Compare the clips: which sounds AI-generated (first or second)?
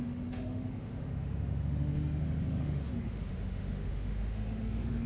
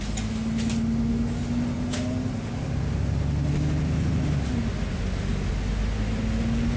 first